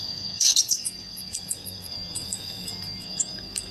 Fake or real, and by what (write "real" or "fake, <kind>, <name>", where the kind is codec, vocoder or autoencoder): fake, codec, SNAC